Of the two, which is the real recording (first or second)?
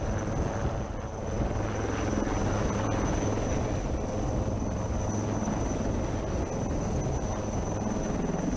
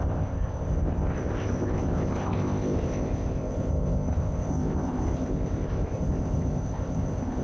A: first